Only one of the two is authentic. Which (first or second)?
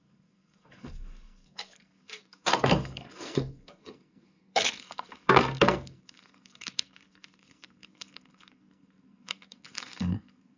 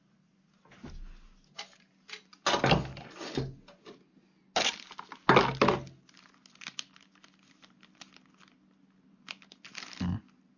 second